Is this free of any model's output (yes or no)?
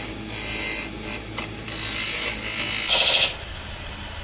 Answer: yes